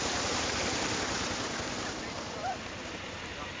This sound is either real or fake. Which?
real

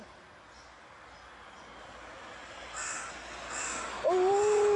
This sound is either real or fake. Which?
real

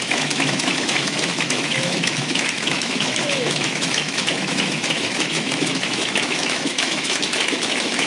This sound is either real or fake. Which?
fake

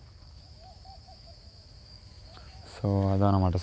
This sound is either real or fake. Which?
fake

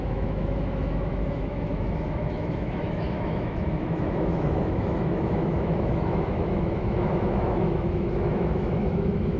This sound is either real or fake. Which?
fake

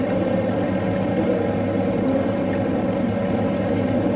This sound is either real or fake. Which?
real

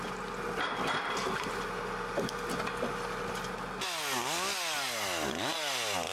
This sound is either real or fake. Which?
real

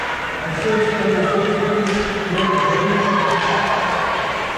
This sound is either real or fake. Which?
real